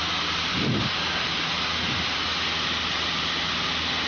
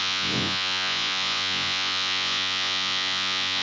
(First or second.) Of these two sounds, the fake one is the second